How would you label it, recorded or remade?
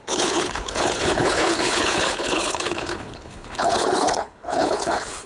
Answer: remade